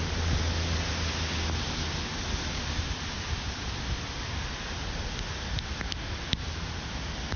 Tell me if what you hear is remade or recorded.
recorded